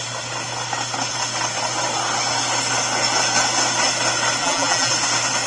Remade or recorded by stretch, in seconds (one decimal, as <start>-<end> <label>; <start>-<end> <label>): 0.0-4.4 recorded; 4.4-4.9 remade; 4.9-5.5 recorded